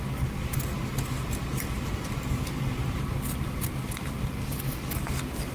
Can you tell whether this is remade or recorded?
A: recorded